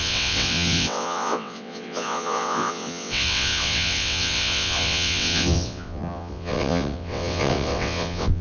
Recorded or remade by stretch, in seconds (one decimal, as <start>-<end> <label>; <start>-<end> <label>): 0.0-8.4 remade